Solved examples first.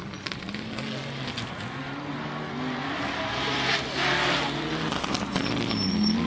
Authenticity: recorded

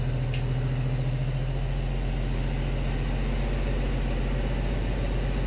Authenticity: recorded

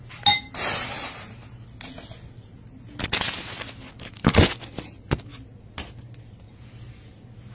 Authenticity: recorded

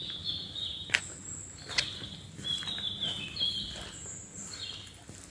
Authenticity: recorded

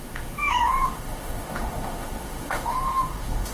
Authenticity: remade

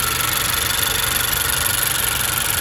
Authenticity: recorded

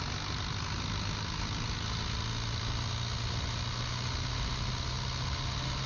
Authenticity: recorded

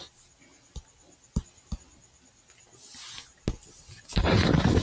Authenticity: recorded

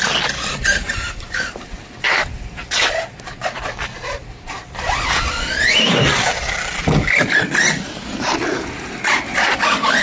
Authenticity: recorded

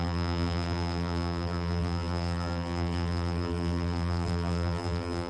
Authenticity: remade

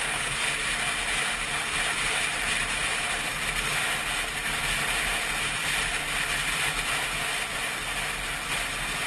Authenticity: recorded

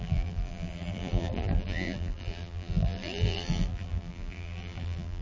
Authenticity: remade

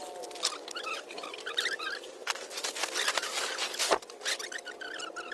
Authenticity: recorded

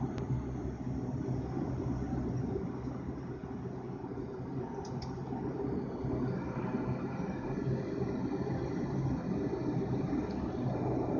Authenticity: recorded